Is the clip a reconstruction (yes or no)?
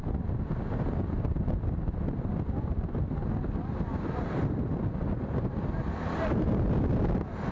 no